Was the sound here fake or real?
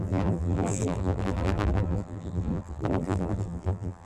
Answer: fake